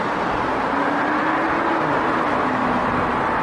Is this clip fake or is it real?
real